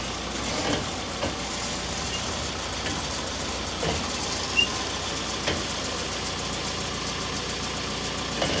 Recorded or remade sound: recorded